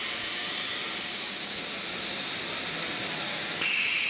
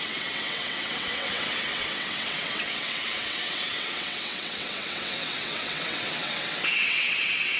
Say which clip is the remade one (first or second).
second